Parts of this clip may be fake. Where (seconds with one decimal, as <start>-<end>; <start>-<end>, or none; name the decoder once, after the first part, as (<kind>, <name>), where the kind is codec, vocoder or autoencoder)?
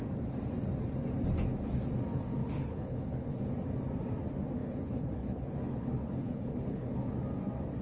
2.4-3.4 (codec, HILCodec); 4.6-7.1